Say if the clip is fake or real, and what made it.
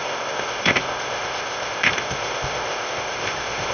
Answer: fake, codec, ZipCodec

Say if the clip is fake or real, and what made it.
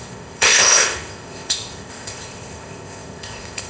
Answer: fake, codec, ZipCodec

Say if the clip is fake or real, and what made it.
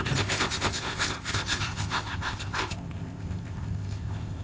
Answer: fake, codec, ZipCodec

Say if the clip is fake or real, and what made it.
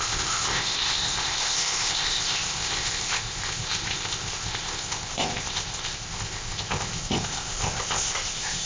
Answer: fake, codec, ZipCodec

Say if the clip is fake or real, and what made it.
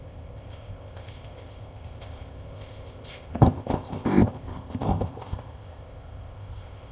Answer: fake, codec, ZipCodec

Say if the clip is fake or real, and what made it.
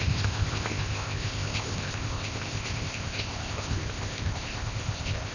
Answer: fake, codec, ZipCodec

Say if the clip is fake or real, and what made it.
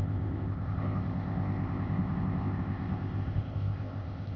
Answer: fake, codec, ZipCodec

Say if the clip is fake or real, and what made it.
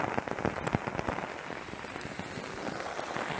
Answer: real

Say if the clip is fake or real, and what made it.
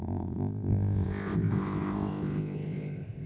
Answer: fake, codec, ZipCodec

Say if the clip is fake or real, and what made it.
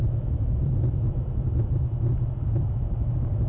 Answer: real